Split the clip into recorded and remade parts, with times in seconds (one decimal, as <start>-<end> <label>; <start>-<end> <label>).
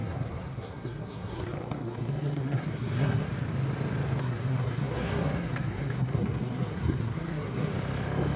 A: 0.0-3.3 remade; 3.3-4.2 recorded; 4.2-7.7 remade; 7.7-8.4 recorded